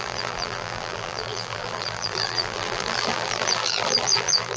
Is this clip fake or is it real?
fake